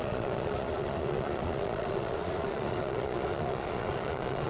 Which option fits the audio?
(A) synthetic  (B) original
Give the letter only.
A